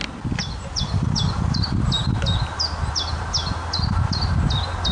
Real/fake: real